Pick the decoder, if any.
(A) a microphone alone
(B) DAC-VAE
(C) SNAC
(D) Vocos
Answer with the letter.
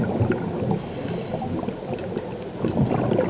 A